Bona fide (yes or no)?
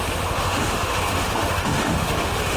no